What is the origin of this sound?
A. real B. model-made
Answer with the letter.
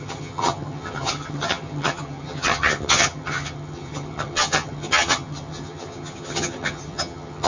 B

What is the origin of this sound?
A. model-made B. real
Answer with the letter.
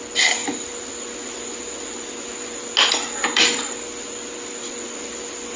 B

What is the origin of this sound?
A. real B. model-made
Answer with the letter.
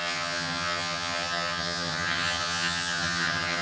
B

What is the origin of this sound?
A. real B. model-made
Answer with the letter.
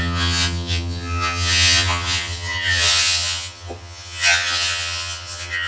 B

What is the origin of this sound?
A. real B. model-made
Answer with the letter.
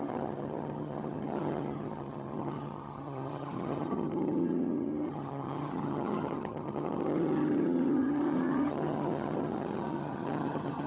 B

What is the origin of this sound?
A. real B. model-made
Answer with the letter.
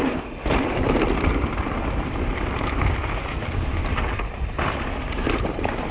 A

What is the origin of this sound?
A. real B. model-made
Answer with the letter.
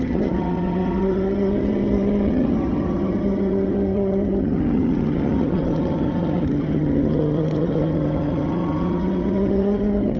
B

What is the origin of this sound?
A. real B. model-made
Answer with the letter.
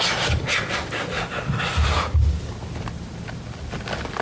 A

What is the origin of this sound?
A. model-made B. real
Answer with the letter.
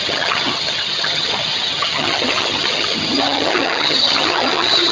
A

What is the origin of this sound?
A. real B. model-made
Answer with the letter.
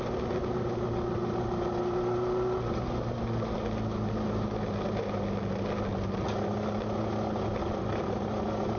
A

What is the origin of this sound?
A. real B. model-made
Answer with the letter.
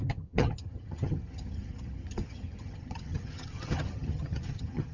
B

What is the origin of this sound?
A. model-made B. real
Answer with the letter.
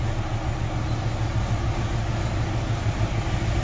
B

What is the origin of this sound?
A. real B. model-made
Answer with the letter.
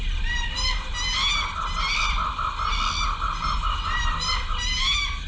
A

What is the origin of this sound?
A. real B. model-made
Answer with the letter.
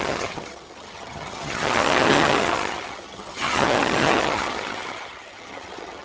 B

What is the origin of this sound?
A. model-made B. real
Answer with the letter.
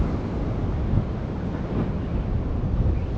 B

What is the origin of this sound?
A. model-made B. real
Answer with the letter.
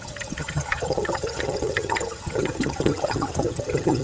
A